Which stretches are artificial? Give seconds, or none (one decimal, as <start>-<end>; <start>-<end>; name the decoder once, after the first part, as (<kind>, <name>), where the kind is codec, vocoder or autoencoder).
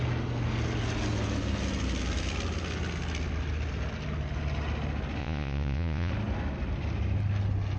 5.2-6.1 (vocoder, Vocos)